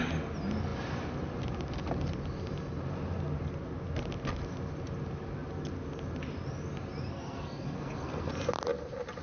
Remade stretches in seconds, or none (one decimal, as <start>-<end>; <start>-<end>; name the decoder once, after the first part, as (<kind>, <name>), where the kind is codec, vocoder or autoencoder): 7.1-8.3 (codec, SNAC)